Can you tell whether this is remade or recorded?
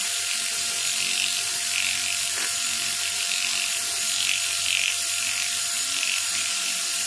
remade